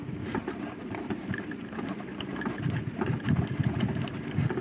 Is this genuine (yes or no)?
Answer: no